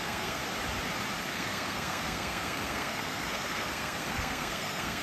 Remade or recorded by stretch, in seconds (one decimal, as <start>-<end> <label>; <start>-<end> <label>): 0.0-0.4 remade; 0.4-1.2 recorded; 1.2-5.0 remade